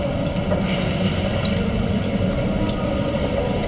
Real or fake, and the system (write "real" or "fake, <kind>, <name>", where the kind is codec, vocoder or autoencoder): real